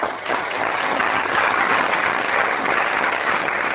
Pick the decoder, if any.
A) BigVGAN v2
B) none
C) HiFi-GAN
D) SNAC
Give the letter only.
C